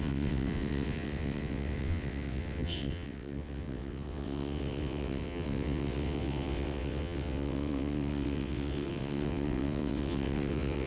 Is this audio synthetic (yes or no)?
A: yes